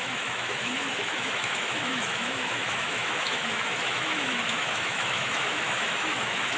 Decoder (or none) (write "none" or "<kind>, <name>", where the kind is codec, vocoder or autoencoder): autoencoder, DAC-VAE